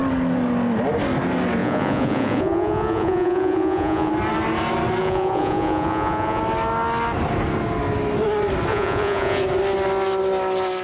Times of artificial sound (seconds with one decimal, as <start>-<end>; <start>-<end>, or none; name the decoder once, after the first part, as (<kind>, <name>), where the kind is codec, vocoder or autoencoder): 1.6-4.1 (vocoder, Vocos); 5.0-6.4; 8.7-9.4